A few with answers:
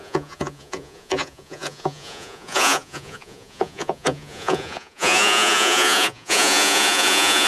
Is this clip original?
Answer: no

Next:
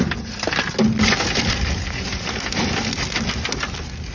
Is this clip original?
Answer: yes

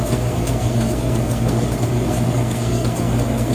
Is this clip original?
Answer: no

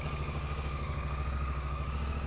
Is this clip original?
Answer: no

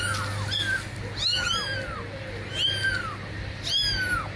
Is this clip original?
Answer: yes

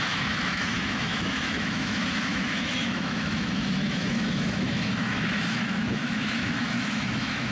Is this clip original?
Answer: no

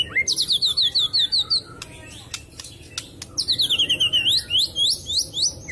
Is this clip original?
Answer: yes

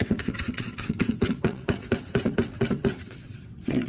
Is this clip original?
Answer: no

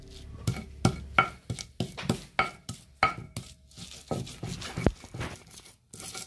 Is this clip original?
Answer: yes